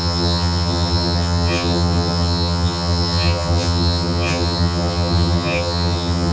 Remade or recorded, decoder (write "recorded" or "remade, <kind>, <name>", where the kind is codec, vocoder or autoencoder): remade, vocoder, HiFi-GAN